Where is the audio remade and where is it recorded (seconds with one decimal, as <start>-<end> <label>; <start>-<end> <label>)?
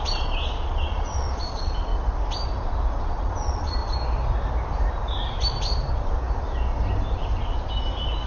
0.0-1.9 remade; 1.9-3.0 recorded; 3.0-3.8 remade; 3.8-8.3 recorded